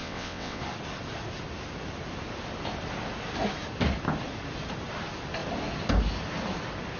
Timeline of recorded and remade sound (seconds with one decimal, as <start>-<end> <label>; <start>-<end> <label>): 0.0-0.6 remade; 0.6-7.0 recorded

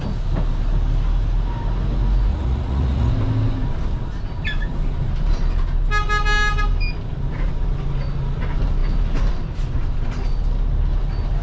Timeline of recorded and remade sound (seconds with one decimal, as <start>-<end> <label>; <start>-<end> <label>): 0.0-2.3 recorded; 2.3-3.1 remade; 3.1-11.4 recorded